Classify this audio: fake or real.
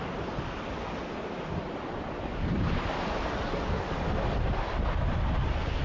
real